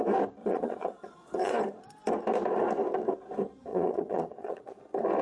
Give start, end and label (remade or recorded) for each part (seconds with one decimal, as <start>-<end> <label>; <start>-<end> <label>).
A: 0.0-0.4 recorded; 0.4-1.6 remade; 1.6-3.7 recorded; 3.7-4.8 remade; 4.8-5.2 recorded